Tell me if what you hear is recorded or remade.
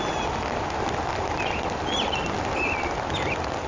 recorded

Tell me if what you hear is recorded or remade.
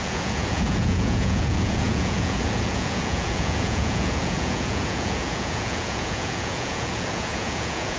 remade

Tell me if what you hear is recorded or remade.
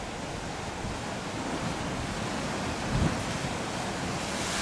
recorded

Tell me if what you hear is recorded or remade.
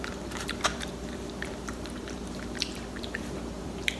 remade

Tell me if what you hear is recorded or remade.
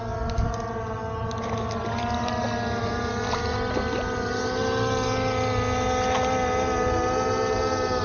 recorded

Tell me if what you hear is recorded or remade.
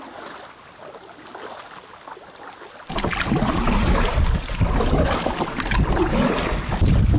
recorded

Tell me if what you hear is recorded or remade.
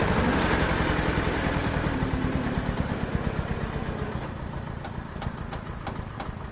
remade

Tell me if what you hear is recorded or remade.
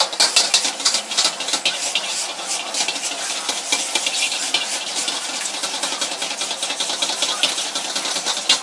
recorded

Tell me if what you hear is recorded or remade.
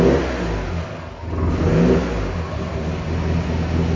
recorded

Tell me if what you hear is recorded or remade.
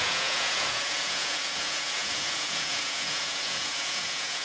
remade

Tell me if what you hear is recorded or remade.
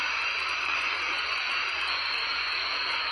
remade